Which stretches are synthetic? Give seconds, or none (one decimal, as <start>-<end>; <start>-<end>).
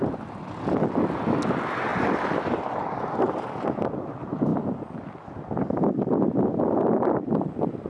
1.9-2.6